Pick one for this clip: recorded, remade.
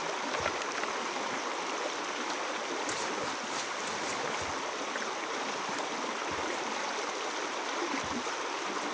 recorded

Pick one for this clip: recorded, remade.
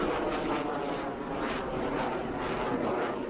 recorded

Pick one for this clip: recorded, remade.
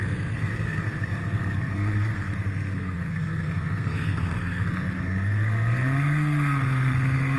remade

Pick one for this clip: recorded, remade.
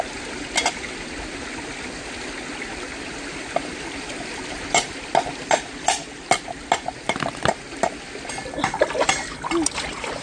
recorded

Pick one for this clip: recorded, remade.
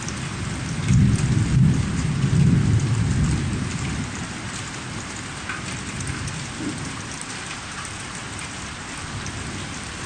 recorded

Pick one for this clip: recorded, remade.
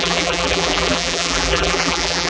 remade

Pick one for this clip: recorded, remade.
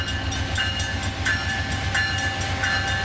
recorded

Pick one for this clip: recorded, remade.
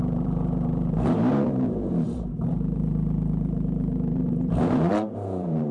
remade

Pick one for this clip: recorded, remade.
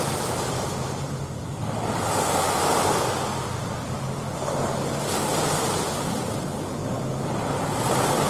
recorded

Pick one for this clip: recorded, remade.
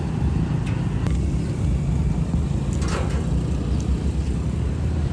recorded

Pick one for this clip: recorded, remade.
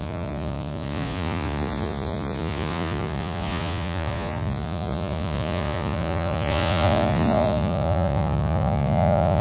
remade